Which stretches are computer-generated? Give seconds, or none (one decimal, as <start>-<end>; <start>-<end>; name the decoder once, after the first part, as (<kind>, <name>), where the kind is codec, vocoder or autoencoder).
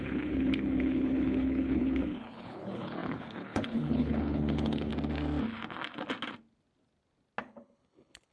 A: 0.0-4.9 (codec, HILCodec); 7.4-8.3